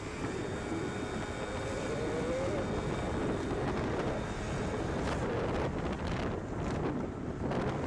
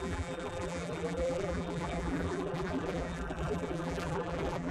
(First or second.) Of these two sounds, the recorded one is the first